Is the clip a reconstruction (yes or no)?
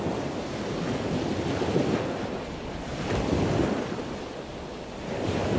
no